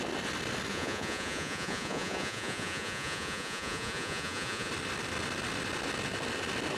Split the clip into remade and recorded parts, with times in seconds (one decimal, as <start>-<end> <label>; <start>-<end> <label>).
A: 0.0-0.7 recorded; 0.7-4.7 remade; 4.7-6.8 recorded